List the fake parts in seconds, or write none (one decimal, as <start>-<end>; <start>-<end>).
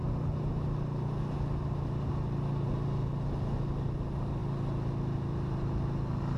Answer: none